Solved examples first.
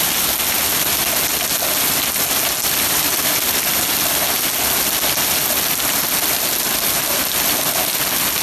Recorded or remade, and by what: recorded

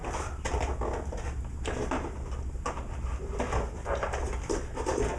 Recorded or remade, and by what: recorded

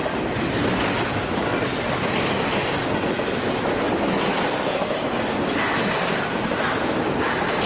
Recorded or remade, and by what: recorded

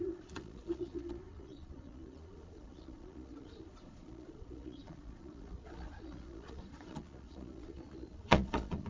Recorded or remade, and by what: remade, vocoder, Vocos